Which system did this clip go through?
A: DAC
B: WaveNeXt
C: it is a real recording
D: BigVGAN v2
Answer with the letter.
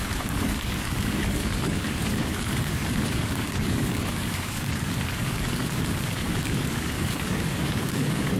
A